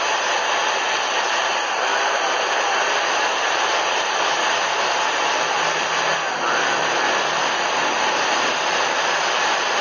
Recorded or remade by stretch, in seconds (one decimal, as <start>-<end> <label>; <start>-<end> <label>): 0.0-1.9 recorded; 1.9-3.1 remade; 3.1-9.8 recorded